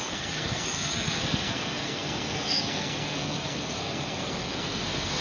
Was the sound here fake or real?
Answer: fake